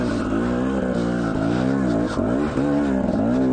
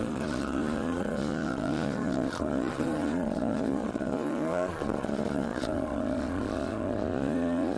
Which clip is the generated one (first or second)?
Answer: second